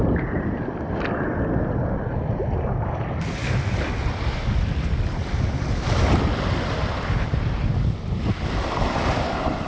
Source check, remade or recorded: recorded